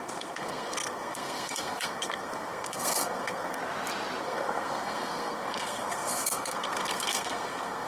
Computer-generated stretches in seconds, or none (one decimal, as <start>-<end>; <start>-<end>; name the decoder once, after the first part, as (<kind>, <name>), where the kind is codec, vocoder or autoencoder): 0.0-3.6 (codec, SNAC); 4.2-7.9